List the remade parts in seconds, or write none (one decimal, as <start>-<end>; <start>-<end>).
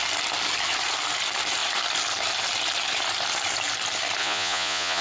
4.2-5.0